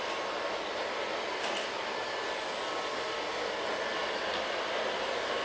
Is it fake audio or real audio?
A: real